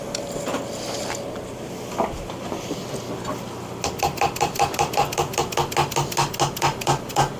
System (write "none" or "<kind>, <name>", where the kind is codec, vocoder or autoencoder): none